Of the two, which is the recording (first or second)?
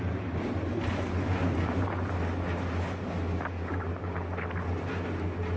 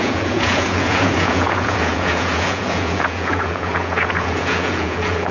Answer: first